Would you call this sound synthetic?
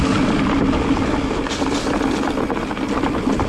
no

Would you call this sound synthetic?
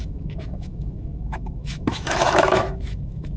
yes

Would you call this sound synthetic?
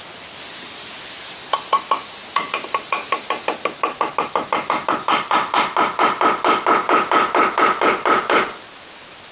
no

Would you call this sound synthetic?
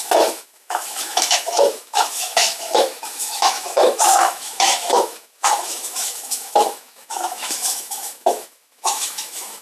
yes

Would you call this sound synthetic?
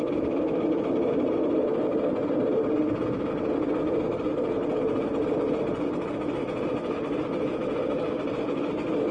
no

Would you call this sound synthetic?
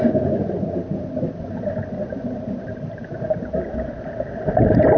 no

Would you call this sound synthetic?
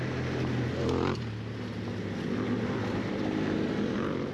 no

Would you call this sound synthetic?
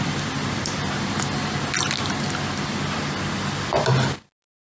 no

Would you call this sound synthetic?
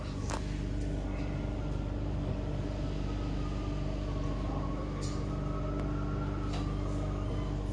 no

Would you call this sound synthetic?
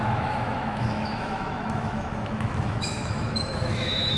yes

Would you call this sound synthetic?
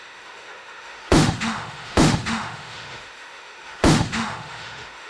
yes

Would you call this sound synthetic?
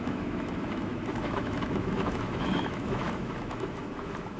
yes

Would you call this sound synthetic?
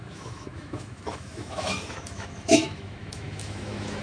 yes